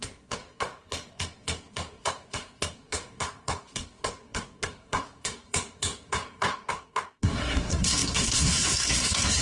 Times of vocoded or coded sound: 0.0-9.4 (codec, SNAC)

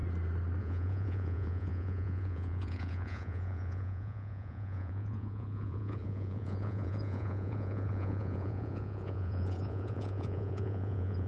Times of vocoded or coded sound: 0.6-11.3 (vocoder, Vocos)